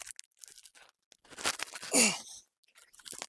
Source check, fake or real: real